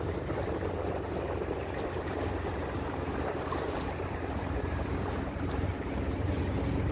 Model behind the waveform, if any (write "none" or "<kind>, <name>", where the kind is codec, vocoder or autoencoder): vocoder, BigVGAN v2